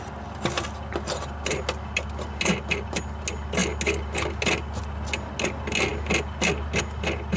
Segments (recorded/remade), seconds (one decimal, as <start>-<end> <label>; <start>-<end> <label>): 0.0-7.4 recorded

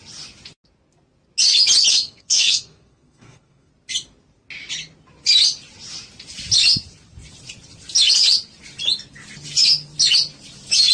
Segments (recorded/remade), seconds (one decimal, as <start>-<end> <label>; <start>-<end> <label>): 0.0-1.9 recorded; 1.9-3.7 remade; 3.7-10.9 recorded